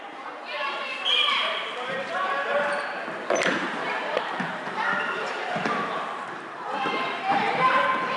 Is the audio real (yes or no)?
no